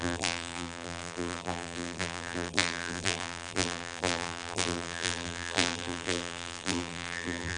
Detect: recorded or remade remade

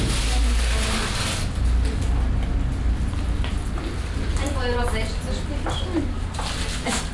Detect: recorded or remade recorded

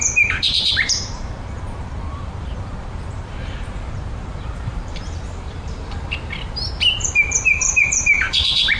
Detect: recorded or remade remade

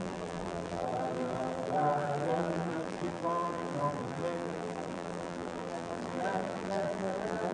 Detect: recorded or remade remade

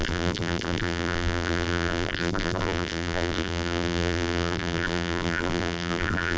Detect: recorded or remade remade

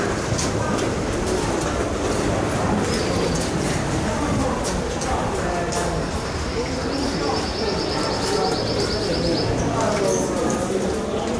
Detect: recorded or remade recorded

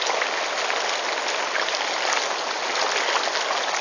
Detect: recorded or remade recorded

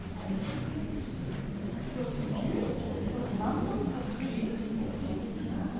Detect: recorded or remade remade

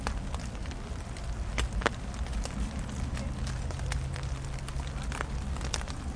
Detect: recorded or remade recorded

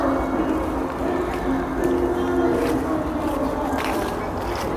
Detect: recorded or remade recorded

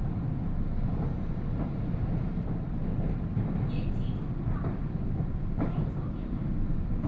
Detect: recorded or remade recorded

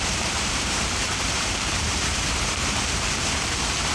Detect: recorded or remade remade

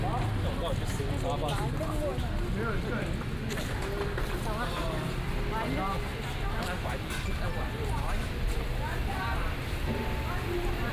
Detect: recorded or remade recorded